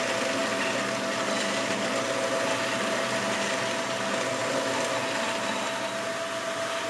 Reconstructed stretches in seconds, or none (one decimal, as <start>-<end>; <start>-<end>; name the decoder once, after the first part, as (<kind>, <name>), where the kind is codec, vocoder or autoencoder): none